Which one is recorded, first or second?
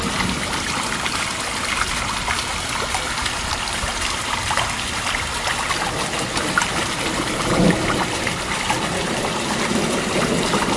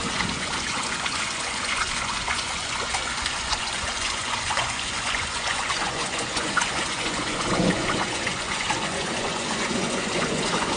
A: first